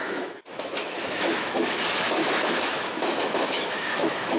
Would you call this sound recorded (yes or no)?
no